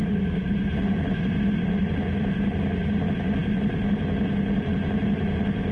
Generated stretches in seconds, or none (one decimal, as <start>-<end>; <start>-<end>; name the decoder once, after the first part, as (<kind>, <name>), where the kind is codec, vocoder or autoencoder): none